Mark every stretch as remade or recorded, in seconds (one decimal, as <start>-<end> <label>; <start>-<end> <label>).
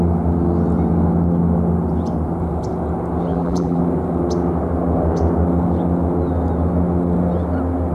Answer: 0.0-3.3 recorded; 3.3-3.8 remade; 3.8-7.9 recorded